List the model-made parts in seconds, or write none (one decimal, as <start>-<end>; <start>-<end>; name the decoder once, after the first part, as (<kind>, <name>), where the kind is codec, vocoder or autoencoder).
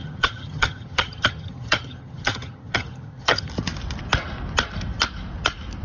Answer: 0.0-3.5 (vocoder, HiFi-GAN)